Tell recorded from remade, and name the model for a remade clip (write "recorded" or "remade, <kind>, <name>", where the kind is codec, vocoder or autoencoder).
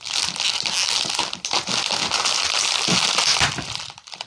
recorded